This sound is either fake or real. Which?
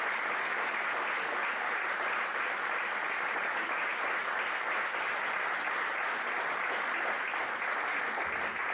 real